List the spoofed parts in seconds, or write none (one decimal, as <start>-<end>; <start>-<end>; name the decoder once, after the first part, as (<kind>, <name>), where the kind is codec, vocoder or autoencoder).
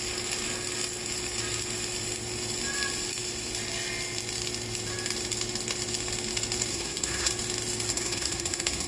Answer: 6.7-7.3 (codec, SNAC); 7.9-8.9